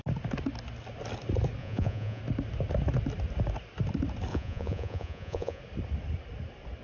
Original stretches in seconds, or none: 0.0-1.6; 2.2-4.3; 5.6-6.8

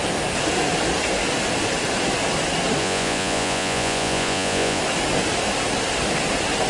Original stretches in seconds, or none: 0.0-2.8; 4.8-6.7